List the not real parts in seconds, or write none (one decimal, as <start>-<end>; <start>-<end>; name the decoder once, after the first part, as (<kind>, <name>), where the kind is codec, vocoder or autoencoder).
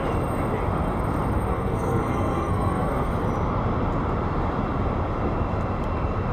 1.5-3.1 (codec, SNAC)